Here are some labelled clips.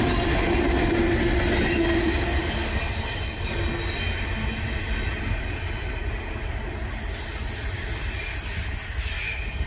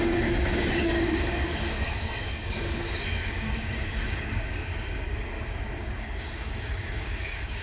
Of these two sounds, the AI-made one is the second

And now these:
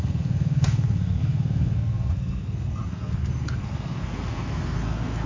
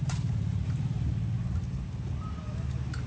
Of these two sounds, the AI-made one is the first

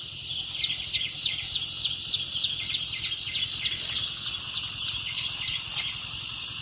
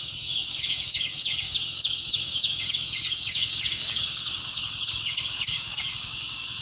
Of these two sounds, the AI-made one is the second